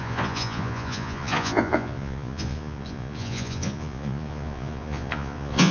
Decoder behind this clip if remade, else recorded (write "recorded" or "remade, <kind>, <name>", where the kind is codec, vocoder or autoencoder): remade, vocoder, Vocos